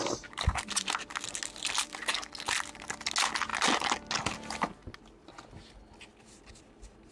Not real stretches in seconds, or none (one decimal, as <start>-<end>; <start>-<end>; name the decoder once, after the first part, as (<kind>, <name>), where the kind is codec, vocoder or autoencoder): none